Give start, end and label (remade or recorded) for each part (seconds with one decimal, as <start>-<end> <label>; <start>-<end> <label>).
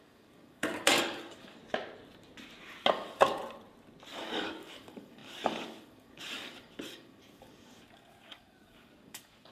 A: 0.0-1.6 remade; 1.6-2.9 recorded; 2.9-3.4 remade; 3.4-4.1 recorded; 4.1-9.5 remade